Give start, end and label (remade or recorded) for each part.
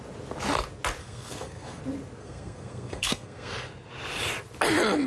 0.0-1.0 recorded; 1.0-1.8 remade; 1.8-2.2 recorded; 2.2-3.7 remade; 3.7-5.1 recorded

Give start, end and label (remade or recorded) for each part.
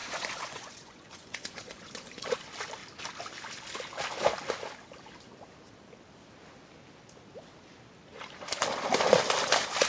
0.0-2.4 remade; 2.4-9.9 recorded